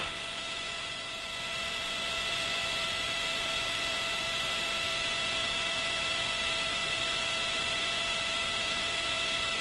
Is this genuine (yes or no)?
no